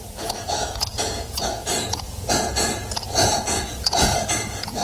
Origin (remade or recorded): remade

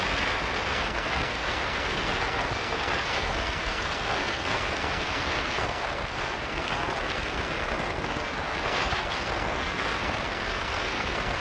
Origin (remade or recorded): remade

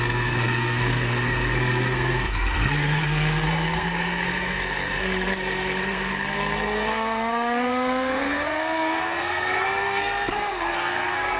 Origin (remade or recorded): remade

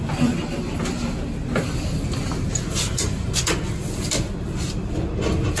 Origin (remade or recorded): recorded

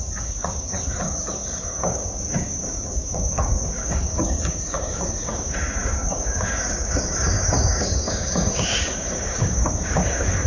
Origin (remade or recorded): remade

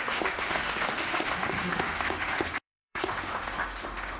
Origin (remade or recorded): remade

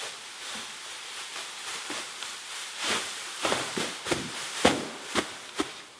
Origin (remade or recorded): remade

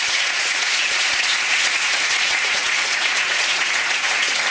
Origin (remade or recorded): remade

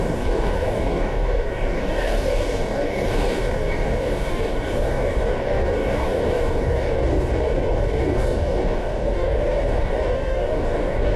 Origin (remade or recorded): remade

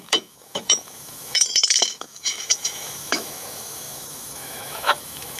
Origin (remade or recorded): remade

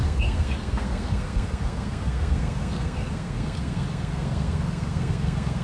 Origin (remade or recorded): remade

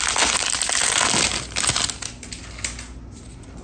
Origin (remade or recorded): recorded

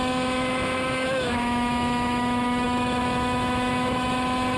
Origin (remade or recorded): remade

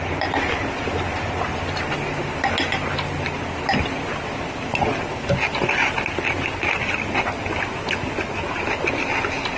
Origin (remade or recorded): recorded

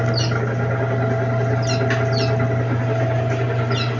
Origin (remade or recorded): recorded